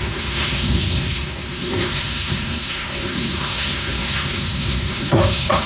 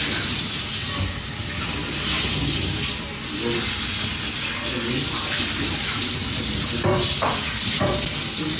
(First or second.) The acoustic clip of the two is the second